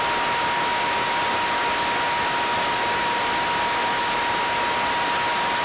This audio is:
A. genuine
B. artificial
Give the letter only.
A